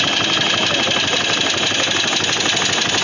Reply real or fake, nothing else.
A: real